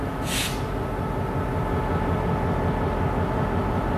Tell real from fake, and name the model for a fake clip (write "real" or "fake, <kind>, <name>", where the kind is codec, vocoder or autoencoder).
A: real